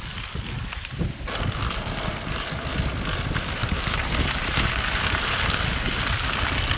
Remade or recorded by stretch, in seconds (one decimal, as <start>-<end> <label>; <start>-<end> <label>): 0.0-3.6 recorded; 3.6-4.7 remade; 4.7-6.8 recorded